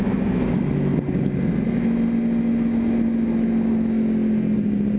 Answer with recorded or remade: recorded